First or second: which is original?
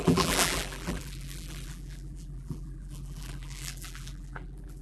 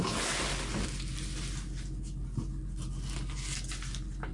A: second